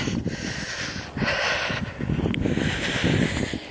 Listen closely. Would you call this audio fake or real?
real